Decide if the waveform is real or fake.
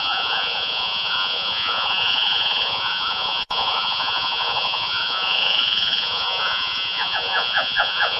fake